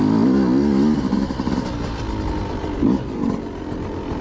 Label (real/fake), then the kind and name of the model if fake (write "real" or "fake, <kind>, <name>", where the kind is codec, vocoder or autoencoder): real